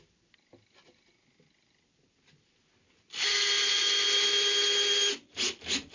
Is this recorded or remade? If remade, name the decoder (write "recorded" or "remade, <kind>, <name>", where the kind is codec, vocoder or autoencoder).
recorded